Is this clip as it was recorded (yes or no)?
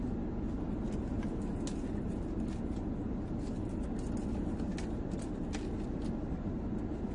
yes